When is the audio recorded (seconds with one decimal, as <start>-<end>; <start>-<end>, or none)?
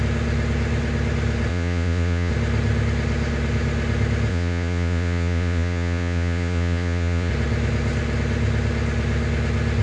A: 0.0-1.5; 2.3-4.3; 7.3-9.8